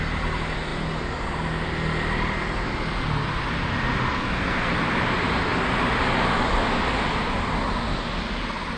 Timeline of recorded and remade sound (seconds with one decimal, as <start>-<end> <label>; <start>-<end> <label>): 0.0-4.1 recorded; 4.1-4.7 remade; 4.7-8.8 recorded